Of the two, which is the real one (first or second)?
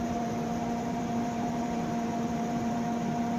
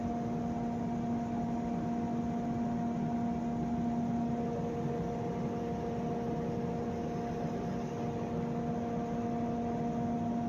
second